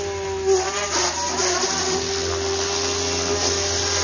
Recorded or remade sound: recorded